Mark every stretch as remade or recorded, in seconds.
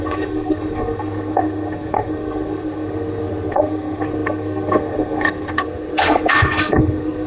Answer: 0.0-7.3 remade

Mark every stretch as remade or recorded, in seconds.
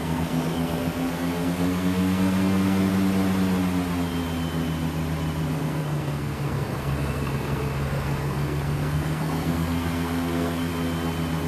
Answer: 0.0-2.9 remade; 2.9-5.5 recorded; 5.5-10.7 remade; 10.7-11.5 recorded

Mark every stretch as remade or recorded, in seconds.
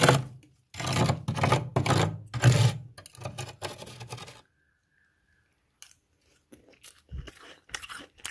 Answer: 0.0-8.3 recorded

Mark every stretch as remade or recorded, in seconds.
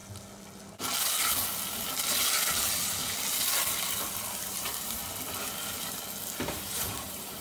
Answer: 0.0-4.4 recorded; 4.4-5.0 remade; 5.0-6.5 recorded; 6.5-7.4 remade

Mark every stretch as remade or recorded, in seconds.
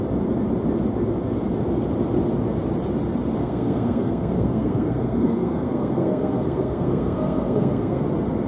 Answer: 0.0-3.4 recorded; 3.4-8.0 remade; 8.0-8.5 recorded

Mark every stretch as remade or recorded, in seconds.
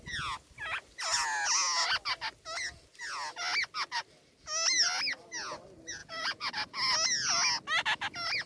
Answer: 0.0-6.0 recorded; 6.0-6.5 remade; 6.5-8.5 recorded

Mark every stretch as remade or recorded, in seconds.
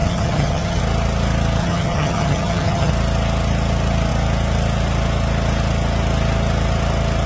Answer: 0.0-0.8 remade; 0.8-1.6 recorded; 1.6-2.9 remade; 2.9-7.3 recorded